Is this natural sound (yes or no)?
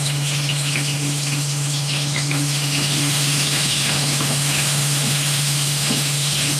no